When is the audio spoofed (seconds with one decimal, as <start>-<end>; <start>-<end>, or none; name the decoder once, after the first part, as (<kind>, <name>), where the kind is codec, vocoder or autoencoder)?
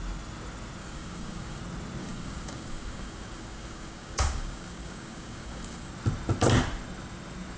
0.8-1.6 (codec, DAC); 2.0-5.9